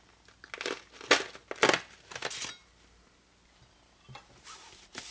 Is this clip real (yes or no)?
yes